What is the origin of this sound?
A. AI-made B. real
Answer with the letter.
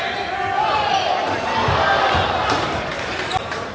B